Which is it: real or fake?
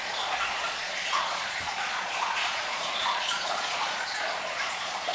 fake